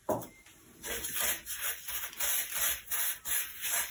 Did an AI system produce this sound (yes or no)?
yes